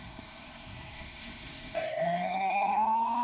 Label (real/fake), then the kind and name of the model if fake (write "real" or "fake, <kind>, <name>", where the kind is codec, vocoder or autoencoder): fake, codec, SNAC